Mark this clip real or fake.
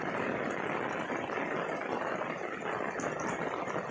real